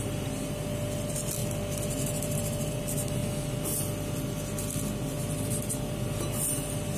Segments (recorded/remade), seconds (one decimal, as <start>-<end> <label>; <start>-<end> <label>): 0.0-7.0 recorded